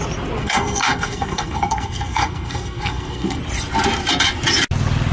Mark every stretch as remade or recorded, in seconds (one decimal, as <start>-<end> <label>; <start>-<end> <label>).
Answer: 0.0-0.4 recorded; 0.4-3.4 remade; 3.4-5.1 recorded